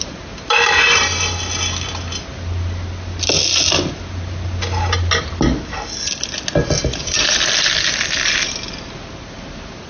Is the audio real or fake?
real